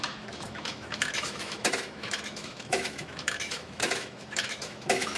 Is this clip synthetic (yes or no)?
yes